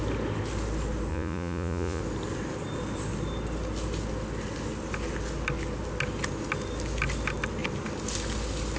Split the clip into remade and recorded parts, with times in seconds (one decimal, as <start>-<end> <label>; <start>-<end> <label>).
0.0-1.1 recorded; 1.1-2.0 remade; 2.0-8.8 recorded